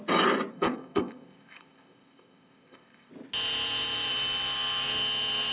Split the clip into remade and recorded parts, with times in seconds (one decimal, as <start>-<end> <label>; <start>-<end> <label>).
0.0-0.5 recorded; 0.5-3.1 remade; 3.1-5.5 recorded